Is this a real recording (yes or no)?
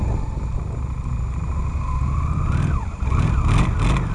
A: yes